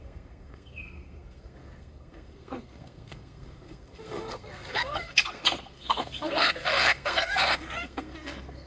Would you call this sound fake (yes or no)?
yes